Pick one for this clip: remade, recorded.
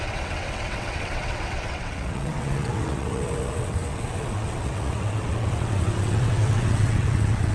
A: remade